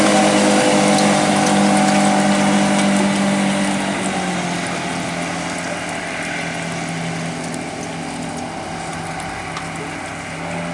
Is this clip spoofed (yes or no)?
no